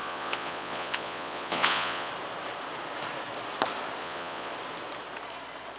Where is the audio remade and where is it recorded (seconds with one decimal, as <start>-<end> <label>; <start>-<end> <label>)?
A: 0.0-2.1 remade; 2.1-4.0 recorded; 4.0-4.5 remade; 4.5-5.8 recorded